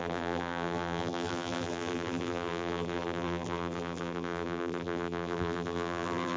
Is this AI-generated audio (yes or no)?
yes